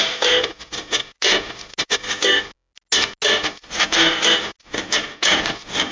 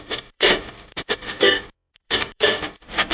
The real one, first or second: first